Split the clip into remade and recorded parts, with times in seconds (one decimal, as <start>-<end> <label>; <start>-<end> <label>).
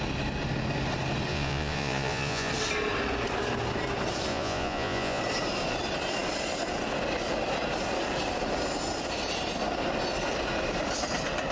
0.0-1.3 recorded; 1.3-2.5 remade; 2.5-4.3 recorded; 4.3-5.2 remade; 5.2-11.5 recorded